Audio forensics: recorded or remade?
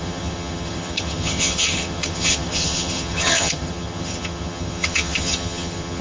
remade